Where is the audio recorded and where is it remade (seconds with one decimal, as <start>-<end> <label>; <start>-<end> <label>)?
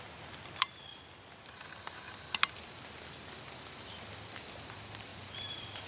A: 0.0-5.1 recorded; 5.1-5.9 remade